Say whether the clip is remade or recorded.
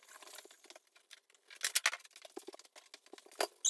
recorded